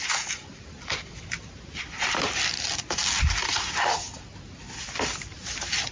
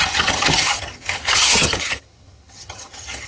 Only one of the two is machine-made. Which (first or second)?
second